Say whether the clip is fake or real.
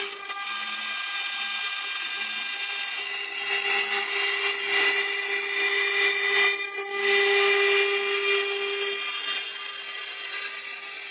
real